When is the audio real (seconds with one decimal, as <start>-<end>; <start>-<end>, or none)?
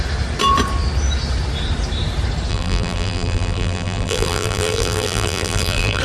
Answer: 0.0-2.5